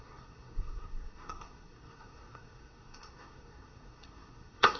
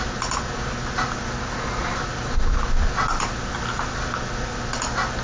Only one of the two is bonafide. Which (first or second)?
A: second